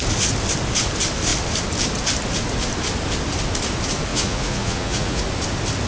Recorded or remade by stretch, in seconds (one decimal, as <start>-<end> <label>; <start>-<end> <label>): 0.0-4.1 recorded; 4.1-5.2 remade; 5.2-5.9 recorded